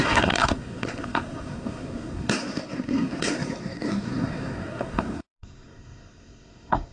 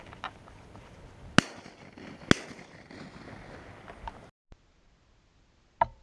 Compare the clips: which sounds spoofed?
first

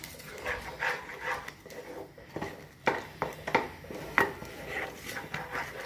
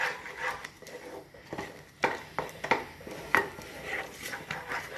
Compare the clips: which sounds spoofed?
second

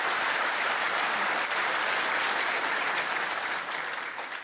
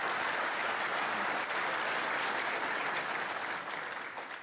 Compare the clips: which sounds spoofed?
first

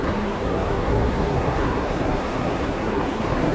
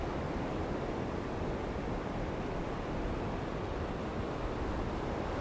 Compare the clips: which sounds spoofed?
first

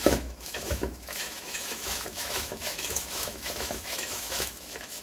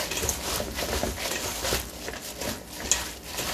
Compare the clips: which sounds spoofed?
first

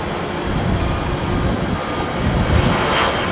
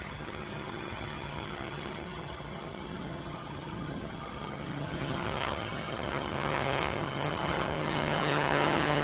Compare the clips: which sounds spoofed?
second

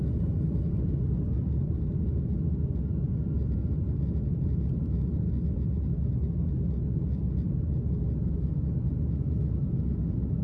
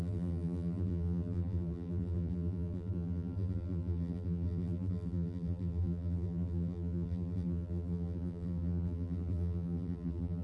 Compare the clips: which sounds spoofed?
second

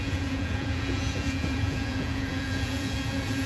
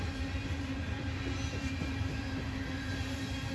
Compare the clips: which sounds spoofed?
first